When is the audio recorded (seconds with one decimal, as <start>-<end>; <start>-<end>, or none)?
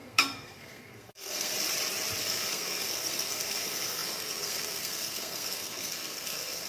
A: 1.5-2.2